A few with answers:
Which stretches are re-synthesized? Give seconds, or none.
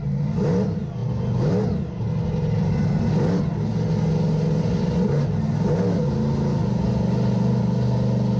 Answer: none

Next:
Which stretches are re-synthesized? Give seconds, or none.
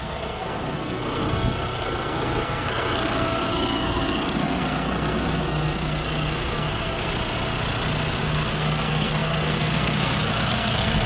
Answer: 0.0-7.1 (codec, SNAC); 8.2-11.1